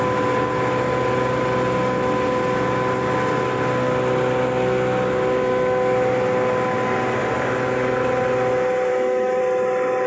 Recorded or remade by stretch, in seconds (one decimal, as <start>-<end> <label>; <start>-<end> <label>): 0.0-8.9 recorded; 8.9-9.4 remade; 9.4-10.1 recorded